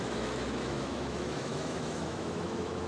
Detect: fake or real fake